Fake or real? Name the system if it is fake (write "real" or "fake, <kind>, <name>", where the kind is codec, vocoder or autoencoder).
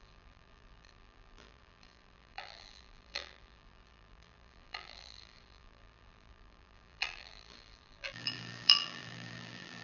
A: fake, vocoder, BigVGAN v2